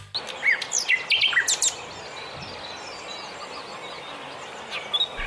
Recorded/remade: recorded